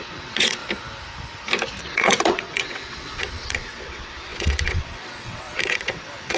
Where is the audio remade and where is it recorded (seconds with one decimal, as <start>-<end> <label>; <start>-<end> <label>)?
0.0-0.6 remade; 0.6-1.8 recorded; 1.8-6.4 remade